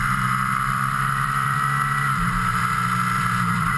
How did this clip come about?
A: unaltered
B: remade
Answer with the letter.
B